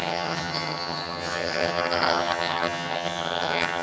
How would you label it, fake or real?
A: fake